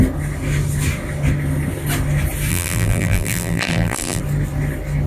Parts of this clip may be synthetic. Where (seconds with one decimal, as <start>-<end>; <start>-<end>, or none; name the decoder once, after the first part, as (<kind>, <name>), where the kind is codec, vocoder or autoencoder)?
2.5-4.2 (vocoder, BigVGAN v2)